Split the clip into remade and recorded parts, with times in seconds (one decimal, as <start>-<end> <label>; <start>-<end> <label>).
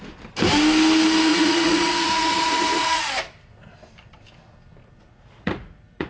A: 0.0-1.3 recorded; 1.3-3.1 remade; 3.1-4.8 recorded; 4.8-6.1 remade